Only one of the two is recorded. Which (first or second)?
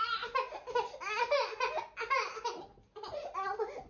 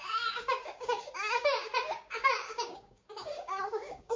first